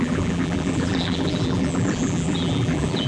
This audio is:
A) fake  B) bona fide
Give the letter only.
A